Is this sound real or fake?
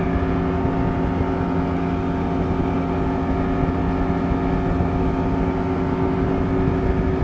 real